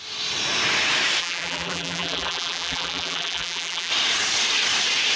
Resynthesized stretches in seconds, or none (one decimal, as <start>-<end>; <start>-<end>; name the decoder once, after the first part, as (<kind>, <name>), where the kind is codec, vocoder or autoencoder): 1.2-3.9 (vocoder, BigVGAN v2)